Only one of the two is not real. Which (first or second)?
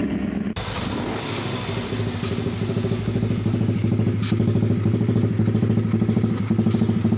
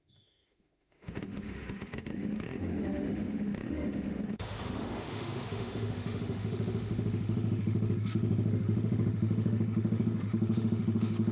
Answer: second